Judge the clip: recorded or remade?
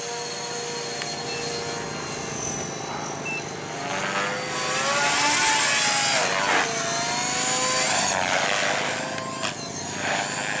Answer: recorded